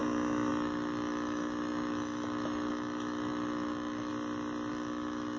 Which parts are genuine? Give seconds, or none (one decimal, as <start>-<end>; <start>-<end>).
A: 4.1-4.7